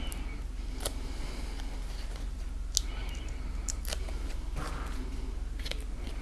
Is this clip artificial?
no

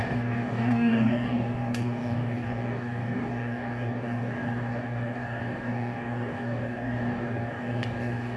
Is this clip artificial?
yes